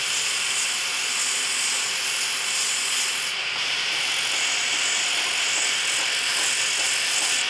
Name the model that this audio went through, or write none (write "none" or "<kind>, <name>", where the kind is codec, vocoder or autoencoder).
none